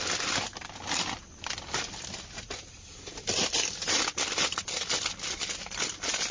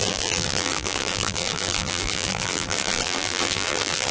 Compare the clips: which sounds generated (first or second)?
second